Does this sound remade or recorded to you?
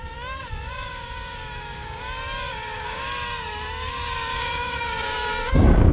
remade